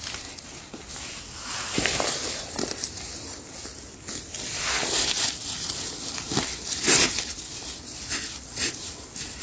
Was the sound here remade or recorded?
recorded